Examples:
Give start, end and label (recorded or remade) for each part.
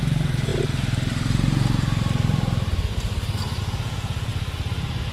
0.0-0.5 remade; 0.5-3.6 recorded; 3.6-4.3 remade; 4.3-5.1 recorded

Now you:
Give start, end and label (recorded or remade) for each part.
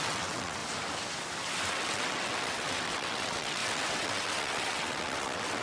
0.0-0.6 remade; 0.6-1.7 recorded; 1.7-5.6 remade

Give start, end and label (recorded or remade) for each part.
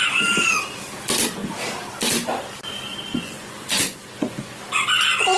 0.0-3.1 recorded; 3.1-4.6 remade; 4.6-5.4 recorded